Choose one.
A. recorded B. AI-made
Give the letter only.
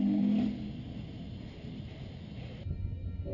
A